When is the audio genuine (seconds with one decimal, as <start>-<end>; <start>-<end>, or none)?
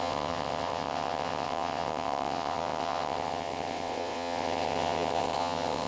none